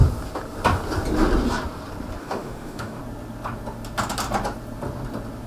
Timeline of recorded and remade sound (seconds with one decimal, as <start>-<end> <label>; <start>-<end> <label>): 0.0-2.2 recorded; 2.2-3.0 remade; 3.0-5.5 recorded